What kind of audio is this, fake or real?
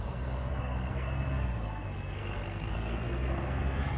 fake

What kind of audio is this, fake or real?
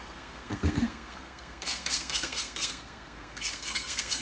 fake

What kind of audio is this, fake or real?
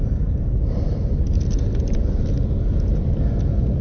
real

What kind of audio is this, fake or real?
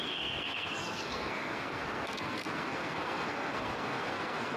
fake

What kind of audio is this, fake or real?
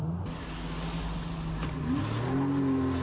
real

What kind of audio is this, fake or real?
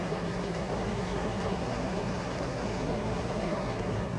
fake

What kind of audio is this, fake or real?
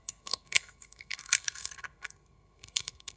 fake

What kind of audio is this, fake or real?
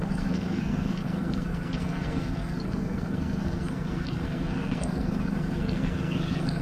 fake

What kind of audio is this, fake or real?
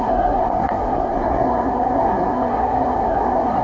fake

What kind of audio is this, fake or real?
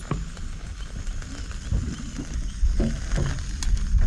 real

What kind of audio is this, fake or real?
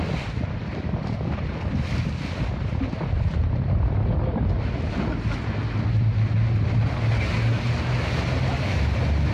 real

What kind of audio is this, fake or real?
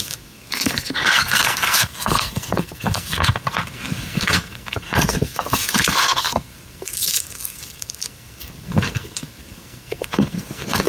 fake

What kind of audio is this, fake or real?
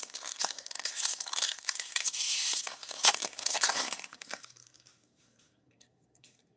fake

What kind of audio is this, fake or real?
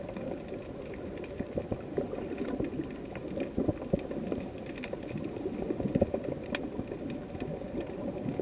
real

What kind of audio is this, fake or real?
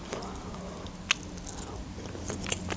real